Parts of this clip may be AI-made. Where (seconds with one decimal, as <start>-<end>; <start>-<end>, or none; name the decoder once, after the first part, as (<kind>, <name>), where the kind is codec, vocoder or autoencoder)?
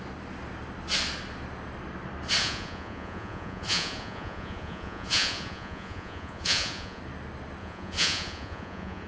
2.4-7.0 (vocoder, Vocos); 7.6-9.1